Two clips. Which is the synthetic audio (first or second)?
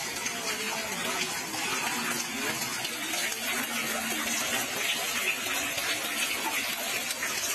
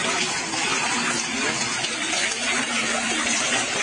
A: second